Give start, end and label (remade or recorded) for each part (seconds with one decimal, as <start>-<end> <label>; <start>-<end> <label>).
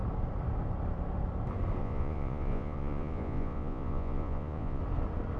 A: 0.0-1.8 recorded; 1.8-4.8 remade; 4.8-5.4 recorded